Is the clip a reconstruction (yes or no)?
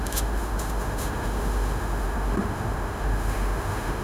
yes